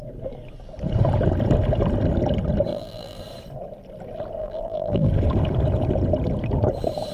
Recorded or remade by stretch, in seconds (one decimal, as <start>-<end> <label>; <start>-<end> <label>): 0.0-2.7 recorded; 2.7-3.2 remade; 3.2-4.4 recorded; 4.4-5.1 remade; 5.1-7.1 recorded